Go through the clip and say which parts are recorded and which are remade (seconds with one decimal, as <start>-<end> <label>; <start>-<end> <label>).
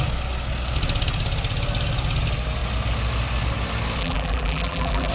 0.0-4.0 recorded; 4.0-5.1 remade